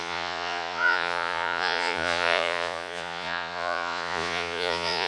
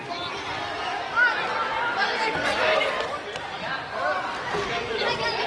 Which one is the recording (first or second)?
second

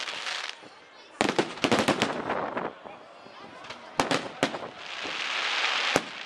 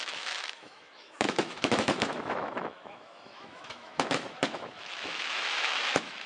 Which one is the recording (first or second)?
first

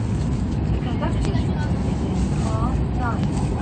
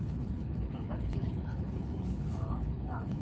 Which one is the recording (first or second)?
first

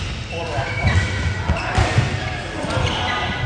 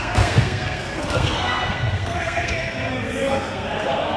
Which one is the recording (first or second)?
first